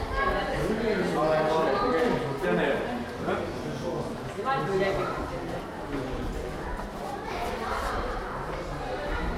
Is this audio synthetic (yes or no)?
no